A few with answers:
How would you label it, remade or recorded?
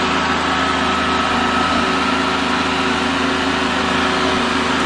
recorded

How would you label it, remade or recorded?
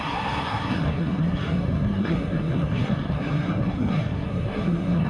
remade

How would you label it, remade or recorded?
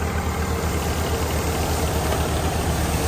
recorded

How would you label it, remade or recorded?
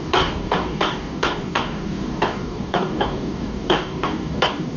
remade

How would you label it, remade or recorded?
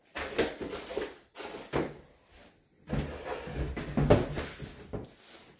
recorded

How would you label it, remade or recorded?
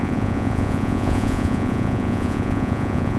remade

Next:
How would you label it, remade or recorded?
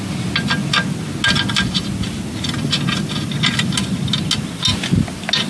recorded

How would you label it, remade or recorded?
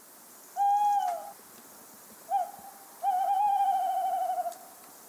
recorded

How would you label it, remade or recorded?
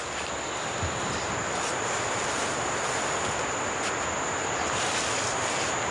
recorded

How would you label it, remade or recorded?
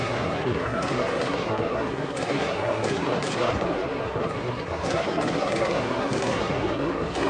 remade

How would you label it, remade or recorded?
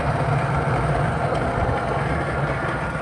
recorded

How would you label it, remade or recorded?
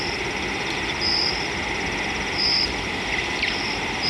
recorded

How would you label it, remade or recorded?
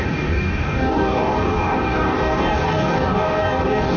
remade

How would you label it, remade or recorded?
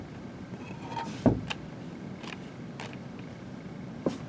recorded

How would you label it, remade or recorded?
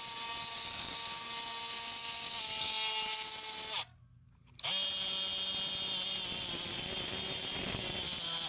recorded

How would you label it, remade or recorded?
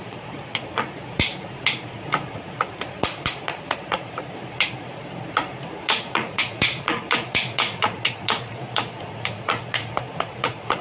remade